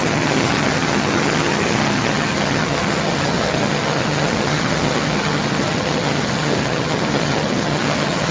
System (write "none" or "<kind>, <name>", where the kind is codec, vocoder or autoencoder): vocoder, HiFi-GAN